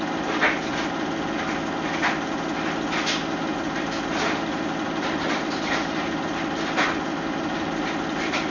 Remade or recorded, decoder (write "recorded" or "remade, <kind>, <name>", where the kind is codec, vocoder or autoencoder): recorded